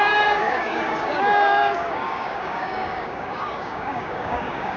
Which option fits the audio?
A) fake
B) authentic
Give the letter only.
A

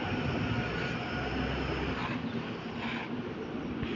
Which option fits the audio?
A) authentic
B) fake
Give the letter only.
A